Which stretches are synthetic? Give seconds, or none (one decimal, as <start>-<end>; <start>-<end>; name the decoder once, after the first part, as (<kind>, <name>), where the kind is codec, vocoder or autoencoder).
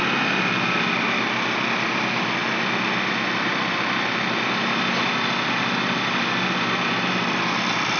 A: none